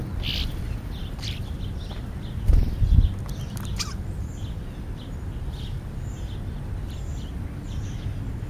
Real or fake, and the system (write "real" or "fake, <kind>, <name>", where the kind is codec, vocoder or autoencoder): real